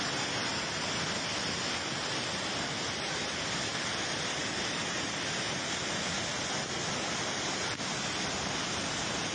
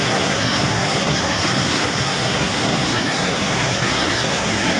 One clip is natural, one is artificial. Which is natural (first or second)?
first